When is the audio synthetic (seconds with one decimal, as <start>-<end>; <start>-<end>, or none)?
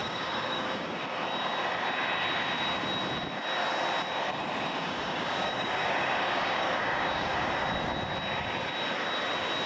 0.0-1.0; 4.8-7.5